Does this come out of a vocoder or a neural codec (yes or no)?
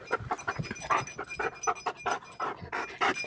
no